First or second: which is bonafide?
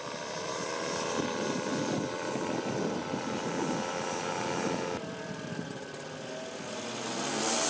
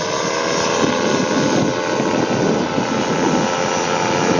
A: second